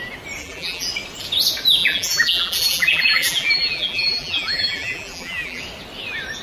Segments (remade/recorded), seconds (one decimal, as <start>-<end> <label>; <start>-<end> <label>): 0.0-0.4 recorded; 0.4-0.9 remade; 0.9-1.8 recorded; 1.8-5.6 remade; 5.6-6.4 recorded